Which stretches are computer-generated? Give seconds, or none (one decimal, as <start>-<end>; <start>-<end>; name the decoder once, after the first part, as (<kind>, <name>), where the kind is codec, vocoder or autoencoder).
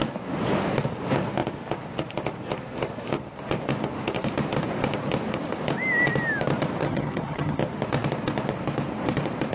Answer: 6.8-7.6 (vocoder, HiFi-GAN)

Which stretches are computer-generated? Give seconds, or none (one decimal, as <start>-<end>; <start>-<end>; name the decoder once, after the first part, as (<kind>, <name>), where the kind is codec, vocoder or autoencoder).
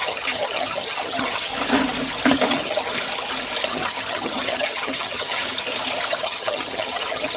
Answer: 0.0-1.5 (vocoder, HiFi-GAN); 2.5-2.9; 3.7-5.4; 6.1-7.4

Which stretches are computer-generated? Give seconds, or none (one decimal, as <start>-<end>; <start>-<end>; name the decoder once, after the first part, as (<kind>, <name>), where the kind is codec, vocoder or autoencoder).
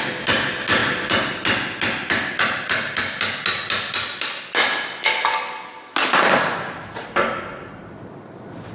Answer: none